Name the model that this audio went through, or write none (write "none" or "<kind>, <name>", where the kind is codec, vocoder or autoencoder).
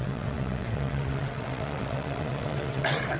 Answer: vocoder, WaveNeXt